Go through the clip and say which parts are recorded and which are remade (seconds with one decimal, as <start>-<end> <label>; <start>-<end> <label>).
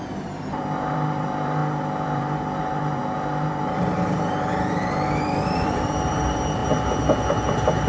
0.0-6.6 remade; 6.6-7.9 recorded